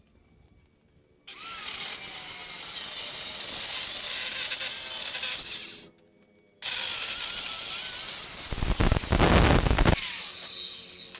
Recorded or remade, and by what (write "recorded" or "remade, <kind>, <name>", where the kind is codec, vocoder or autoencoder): recorded